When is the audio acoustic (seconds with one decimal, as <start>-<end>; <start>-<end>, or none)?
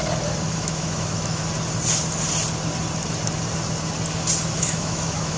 0.0-0.5; 1.4-4.6